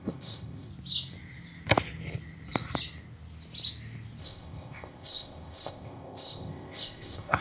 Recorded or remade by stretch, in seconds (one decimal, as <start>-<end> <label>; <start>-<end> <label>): 0.0-0.7 remade; 0.7-4.2 recorded; 4.2-7.4 remade